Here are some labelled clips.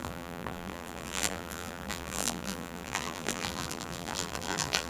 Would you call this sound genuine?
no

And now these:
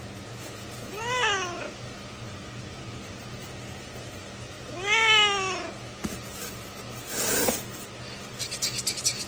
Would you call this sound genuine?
yes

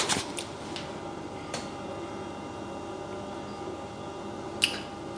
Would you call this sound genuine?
yes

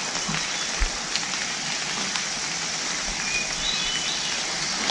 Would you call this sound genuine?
yes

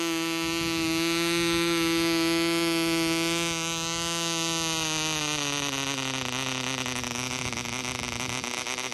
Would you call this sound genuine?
yes